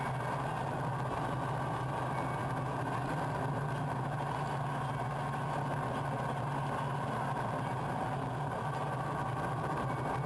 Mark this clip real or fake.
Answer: real